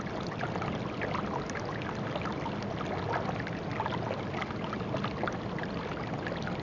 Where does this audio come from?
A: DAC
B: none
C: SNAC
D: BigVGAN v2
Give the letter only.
B